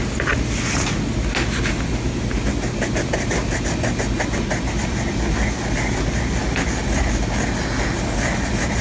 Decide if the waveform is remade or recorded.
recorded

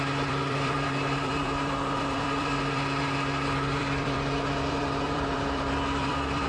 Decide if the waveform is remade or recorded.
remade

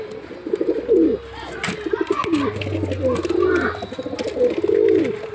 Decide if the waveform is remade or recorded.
recorded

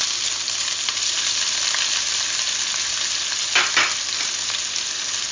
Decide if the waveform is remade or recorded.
recorded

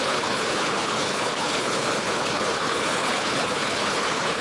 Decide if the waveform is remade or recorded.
remade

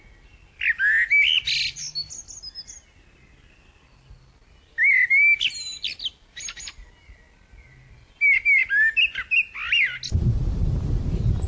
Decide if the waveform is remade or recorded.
recorded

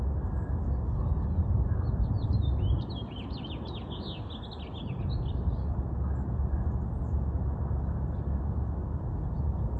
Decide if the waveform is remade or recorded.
recorded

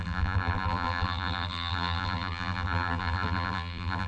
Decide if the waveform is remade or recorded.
remade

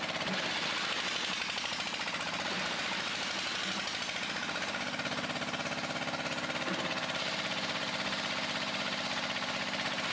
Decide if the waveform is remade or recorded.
recorded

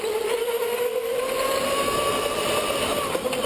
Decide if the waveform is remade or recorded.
recorded